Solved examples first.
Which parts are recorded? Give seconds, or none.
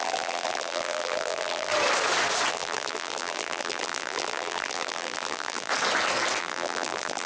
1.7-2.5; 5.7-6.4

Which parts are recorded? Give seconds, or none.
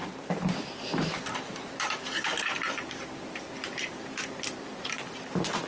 none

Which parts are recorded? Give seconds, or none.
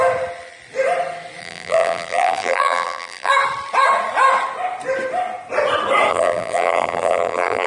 0.0-1.4; 3.3-6.1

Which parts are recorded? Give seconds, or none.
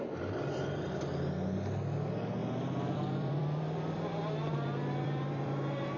0.0-2.4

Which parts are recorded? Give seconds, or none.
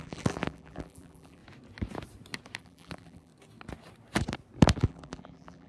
1.4-2.6; 3.3-4.8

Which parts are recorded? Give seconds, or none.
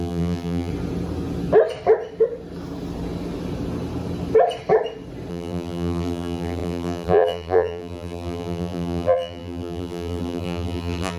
0.7-5.3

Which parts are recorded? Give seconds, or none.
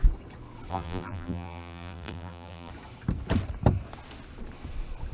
0.0-0.7; 2.7-5.1